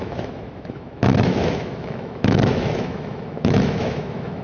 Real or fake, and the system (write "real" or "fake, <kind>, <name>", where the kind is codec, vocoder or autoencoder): fake, autoencoder, DAC-VAE